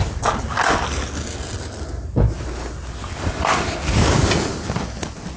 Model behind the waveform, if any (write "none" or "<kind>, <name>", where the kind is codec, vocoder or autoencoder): none